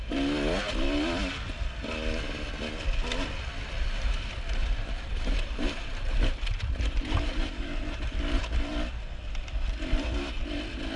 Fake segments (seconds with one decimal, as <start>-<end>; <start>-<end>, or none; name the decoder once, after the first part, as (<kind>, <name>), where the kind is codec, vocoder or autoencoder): 4.6-8.2 (vocoder, BigVGAN v2)